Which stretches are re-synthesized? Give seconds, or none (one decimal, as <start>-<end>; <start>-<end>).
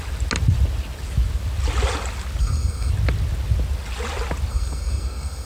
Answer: 2.4-2.9; 4.5-5.5